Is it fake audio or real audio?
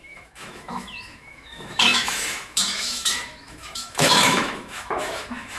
fake